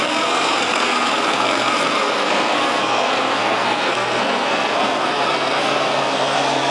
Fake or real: fake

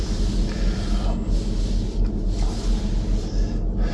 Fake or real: real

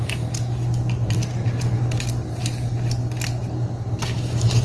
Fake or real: real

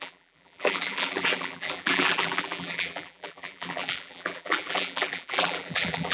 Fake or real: fake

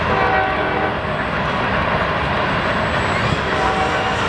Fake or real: real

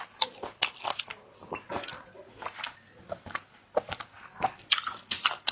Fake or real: real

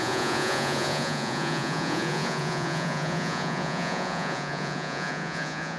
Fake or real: fake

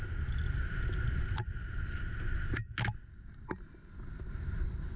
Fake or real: real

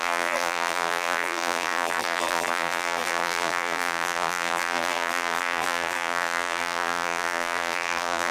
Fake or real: fake